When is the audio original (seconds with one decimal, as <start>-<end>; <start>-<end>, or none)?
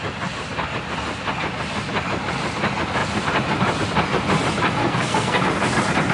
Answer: 0.0-4.8; 5.4-6.1